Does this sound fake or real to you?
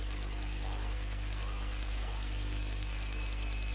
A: fake